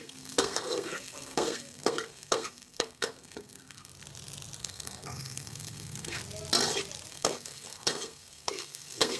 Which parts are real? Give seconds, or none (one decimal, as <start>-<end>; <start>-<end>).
3.9-4.6; 6.2-7.1